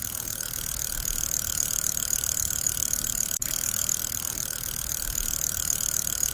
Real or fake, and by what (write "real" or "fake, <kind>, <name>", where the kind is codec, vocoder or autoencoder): fake, vocoder, BigVGAN v2